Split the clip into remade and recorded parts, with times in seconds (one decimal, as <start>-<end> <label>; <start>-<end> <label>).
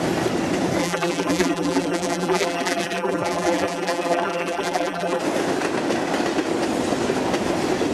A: 0.0-0.8 recorded; 0.8-5.2 remade; 5.2-7.9 recorded